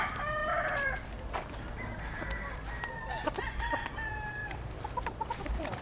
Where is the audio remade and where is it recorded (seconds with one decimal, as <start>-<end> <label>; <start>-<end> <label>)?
0.0-0.4 recorded; 0.4-1.2 remade; 1.2-4.4 recorded; 4.4-5.8 remade